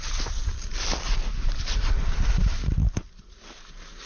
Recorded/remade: recorded